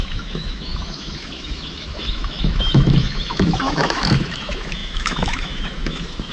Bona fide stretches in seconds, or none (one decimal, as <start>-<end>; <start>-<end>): none